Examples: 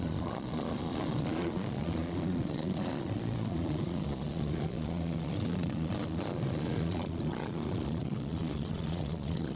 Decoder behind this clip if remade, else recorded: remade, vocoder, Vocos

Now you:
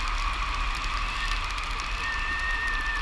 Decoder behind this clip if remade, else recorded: recorded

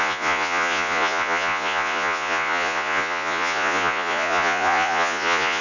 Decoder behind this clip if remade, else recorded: remade, vocoder, Vocos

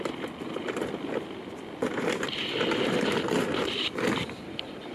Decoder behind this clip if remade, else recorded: recorded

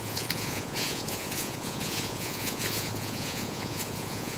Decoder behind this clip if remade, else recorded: remade, vocoder, Vocos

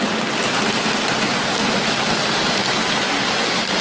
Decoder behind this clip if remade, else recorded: recorded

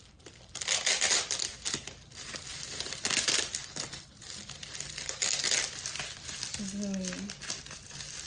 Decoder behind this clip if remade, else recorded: recorded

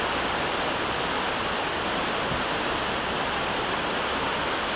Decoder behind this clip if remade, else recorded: recorded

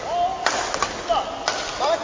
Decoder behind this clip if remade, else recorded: recorded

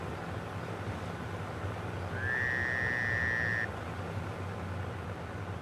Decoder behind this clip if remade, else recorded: recorded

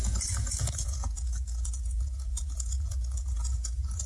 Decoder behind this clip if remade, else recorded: remade, vocoder, Vocos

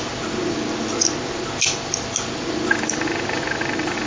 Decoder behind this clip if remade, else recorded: recorded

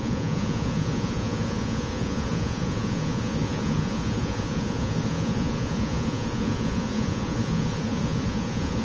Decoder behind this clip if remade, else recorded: remade, vocoder, Vocos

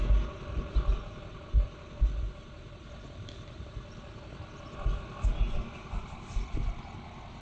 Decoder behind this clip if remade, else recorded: recorded